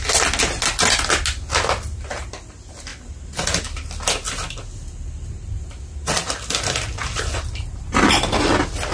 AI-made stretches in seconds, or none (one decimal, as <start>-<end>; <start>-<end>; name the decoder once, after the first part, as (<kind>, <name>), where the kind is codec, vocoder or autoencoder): none